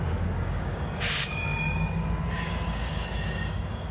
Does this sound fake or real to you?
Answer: fake